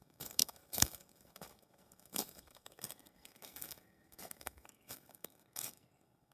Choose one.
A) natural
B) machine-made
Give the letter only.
B